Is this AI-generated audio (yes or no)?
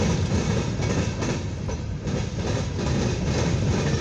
no